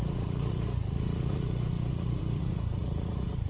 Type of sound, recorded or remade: remade